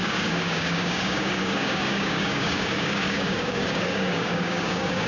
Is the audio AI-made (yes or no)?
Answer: yes